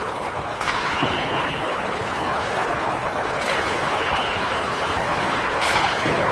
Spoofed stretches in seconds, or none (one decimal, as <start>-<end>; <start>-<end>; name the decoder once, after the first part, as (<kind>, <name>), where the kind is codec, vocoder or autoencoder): 0.0-6.3 (codec, HILCodec)